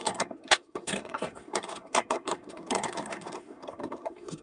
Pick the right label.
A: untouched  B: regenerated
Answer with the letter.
B